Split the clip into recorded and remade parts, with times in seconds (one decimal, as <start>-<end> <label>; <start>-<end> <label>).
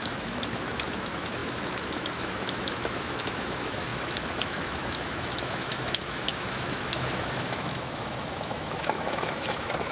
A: 0.0-9.9 remade